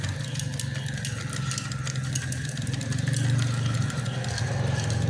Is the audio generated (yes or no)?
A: no